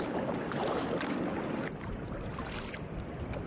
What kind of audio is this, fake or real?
real